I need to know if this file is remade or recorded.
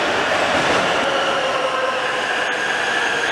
recorded